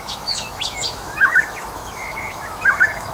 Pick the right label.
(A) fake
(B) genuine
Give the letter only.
A